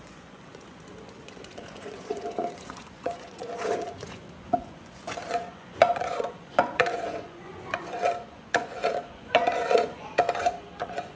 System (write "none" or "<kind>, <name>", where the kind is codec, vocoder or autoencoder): vocoder, Vocos